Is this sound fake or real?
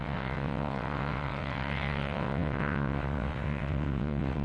fake